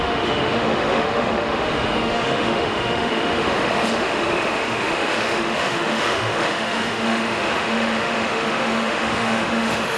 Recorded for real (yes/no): no